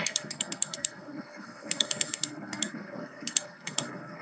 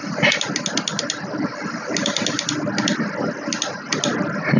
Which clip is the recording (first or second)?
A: second